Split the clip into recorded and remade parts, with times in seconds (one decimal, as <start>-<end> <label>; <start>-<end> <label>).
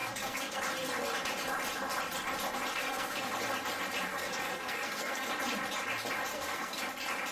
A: 0.0-0.6 remade; 0.6-2.8 recorded; 2.8-3.3 remade; 3.3-4.1 recorded; 4.1-5.3 remade; 5.3-6.3 recorded; 6.3-6.8 remade; 6.8-7.3 recorded